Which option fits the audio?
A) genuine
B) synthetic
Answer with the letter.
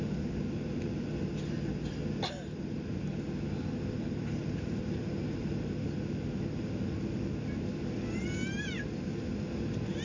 A